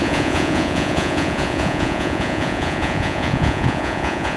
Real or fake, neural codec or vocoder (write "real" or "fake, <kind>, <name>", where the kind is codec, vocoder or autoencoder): fake, vocoder, Vocos